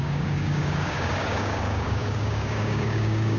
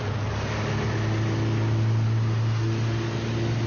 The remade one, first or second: first